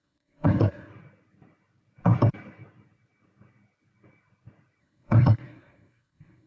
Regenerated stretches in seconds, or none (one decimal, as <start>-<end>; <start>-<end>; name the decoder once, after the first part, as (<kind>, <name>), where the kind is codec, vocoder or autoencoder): 0.0-0.9 (codec, SNAC); 4.8-6.5